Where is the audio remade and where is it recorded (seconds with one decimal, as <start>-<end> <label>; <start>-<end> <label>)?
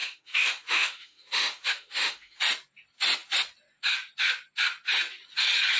0.0-2.4 remade; 2.4-5.8 recorded